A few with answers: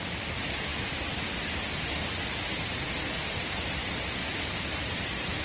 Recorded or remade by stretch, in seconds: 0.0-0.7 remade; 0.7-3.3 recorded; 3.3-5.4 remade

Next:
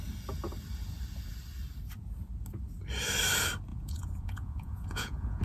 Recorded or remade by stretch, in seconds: 0.0-3.7 recorded; 3.7-5.4 remade

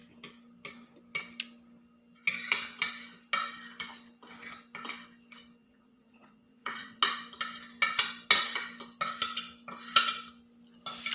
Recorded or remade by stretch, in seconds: 0.0-5.6 recorded; 5.6-7.0 remade; 7.0-11.1 recorded